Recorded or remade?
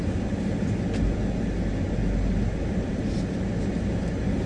recorded